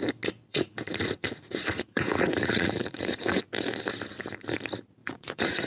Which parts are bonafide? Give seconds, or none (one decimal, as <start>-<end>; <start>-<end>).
0.0-0.5; 3.4-5.0